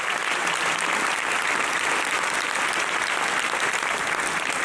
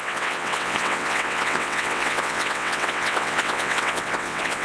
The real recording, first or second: first